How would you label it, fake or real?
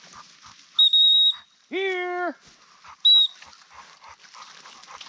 real